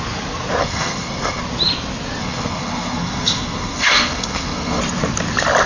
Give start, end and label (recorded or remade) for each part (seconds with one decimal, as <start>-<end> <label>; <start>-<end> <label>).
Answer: 0.0-0.6 recorded; 0.6-1.4 remade; 1.4-2.2 recorded; 2.2-4.8 remade; 4.8-5.7 recorded

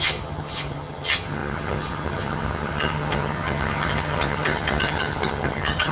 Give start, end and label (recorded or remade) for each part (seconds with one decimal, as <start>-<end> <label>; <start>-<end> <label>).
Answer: 0.0-5.9 remade

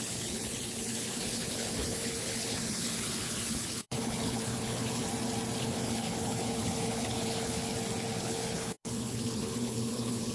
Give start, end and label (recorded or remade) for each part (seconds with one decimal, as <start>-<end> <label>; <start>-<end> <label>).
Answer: 0.0-5.0 remade; 5.0-5.6 recorded; 5.6-7.7 remade; 7.7-8.2 recorded; 8.2-10.3 remade

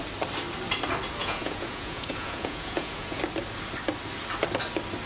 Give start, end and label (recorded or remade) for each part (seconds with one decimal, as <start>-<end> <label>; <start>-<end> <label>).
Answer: 0.0-1.2 recorded; 1.2-3.2 remade; 3.2-5.1 recorded